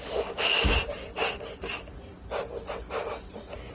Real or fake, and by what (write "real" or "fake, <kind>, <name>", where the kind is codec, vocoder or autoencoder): real